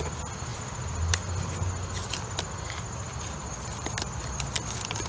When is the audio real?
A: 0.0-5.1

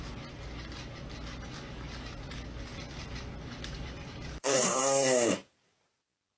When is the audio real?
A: 0.0-2.7; 4.8-6.4

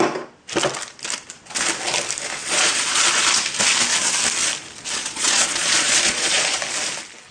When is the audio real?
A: 0.0-2.4; 3.1-5.0; 6.6-7.3

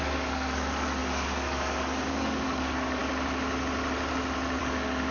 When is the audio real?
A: 3.0-4.6

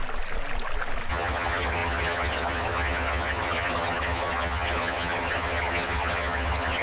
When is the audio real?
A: 0.0-1.1

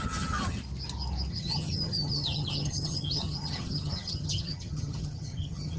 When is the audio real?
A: 0.6-1.3

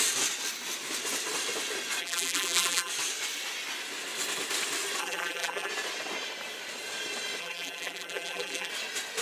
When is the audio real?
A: 0.0-2.0; 2.9-5.0; 5.7-7.4; 8.7-9.2